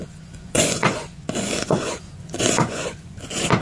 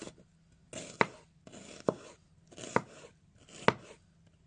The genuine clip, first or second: second